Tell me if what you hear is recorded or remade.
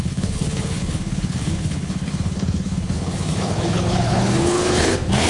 remade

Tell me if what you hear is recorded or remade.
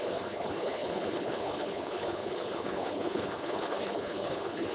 remade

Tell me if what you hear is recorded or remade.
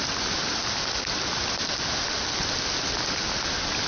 recorded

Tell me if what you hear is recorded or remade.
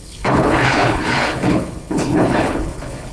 remade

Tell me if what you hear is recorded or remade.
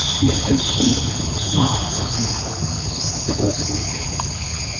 remade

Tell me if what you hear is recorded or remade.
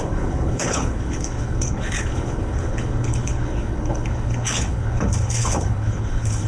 remade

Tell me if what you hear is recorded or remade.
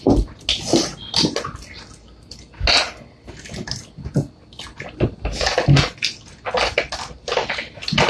recorded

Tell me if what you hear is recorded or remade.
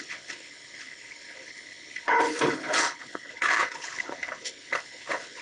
remade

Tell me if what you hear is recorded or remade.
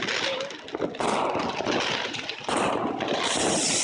recorded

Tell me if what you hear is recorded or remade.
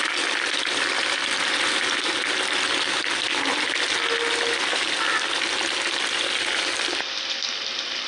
recorded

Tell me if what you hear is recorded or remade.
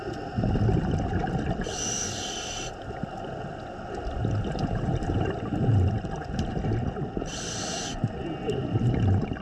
recorded